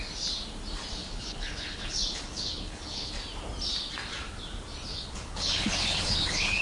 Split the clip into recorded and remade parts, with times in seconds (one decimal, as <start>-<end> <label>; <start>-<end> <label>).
0.0-1.0 recorded; 1.0-3.1 remade; 3.1-4.9 recorded; 4.9-6.6 remade